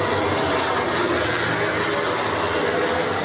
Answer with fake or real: real